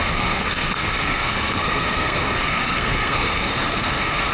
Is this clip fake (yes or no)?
yes